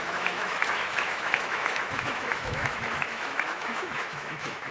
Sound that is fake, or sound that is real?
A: fake